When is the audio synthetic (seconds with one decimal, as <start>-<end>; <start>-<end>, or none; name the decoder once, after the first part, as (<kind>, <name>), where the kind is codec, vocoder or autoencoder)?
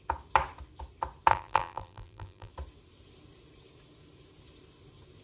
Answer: 1.3-2.5 (vocoder, BigVGAN v2)